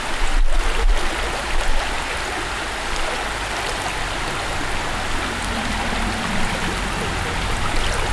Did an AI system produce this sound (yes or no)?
no